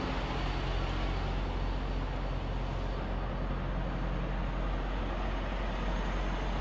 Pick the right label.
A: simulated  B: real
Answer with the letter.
B